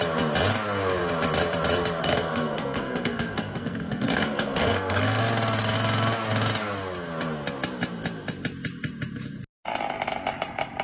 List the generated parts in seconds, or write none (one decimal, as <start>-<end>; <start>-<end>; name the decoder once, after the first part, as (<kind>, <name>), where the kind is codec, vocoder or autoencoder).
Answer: 2.0-5.2 (codec, SNAC)